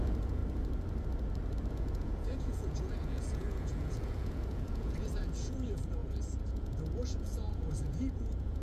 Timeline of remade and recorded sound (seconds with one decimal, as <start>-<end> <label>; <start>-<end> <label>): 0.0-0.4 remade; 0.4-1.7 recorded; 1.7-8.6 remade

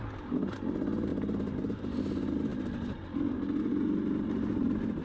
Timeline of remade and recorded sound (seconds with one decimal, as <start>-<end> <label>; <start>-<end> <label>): 0.0-5.0 recorded

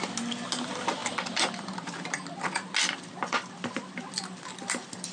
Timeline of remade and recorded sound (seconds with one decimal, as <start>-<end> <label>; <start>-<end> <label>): 0.0-5.1 recorded